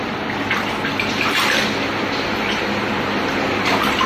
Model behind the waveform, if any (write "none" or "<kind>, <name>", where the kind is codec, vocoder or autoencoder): none